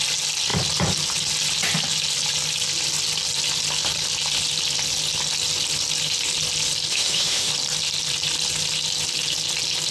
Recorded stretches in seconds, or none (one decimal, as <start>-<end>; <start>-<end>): 0.0-6.9; 7.5-9.9